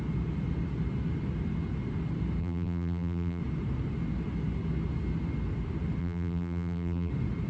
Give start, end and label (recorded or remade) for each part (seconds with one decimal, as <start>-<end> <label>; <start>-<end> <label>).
0.0-2.4 recorded; 2.4-3.4 remade; 3.4-6.0 recorded; 6.0-7.1 remade; 7.1-7.5 recorded